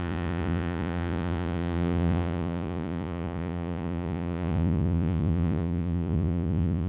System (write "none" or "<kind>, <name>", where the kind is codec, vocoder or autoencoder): vocoder, Vocos